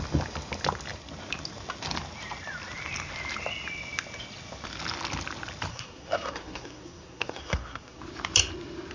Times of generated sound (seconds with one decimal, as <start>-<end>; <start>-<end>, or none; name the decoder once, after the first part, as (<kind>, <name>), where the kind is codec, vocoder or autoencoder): 5.7-8.0 (codec, SNAC)